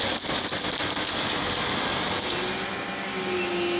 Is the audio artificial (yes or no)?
no